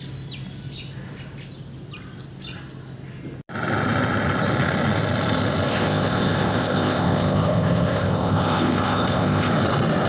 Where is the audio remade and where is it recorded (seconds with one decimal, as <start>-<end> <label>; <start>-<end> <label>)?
0.0-5.7 recorded; 5.7-9.5 remade; 9.5-10.1 recorded